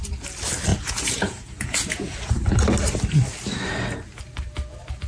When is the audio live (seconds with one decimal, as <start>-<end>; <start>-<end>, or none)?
0.0-0.7; 2.5-5.1